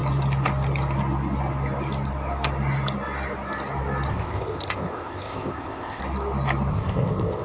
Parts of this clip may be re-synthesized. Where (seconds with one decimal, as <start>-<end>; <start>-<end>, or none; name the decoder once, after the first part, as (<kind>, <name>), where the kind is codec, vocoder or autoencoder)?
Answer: 4.1-6.0 (codec, ZipCodec); 6.7-7.4